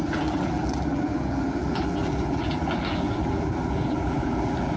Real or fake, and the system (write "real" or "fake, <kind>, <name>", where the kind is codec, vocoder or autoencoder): fake, vocoder, BigVGAN v2